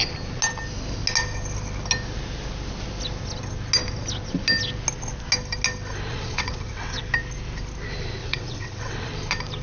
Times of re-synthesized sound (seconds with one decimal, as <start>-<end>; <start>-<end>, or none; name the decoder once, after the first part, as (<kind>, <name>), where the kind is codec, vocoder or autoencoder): 6.1-7.0 (vocoder, WaveNeXt); 8.2-9.1